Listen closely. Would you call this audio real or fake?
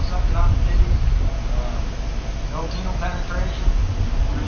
real